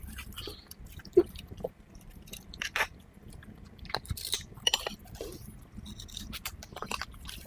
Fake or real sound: real